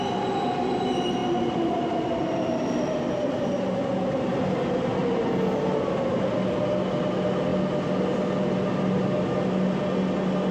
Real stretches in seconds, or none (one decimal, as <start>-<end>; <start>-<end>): 0.0-10.5